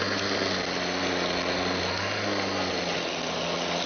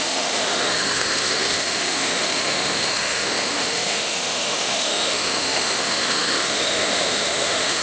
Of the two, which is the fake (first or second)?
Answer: second